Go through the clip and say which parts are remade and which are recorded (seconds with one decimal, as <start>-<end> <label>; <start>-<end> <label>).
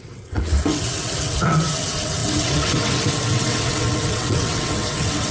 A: 0.0-5.3 remade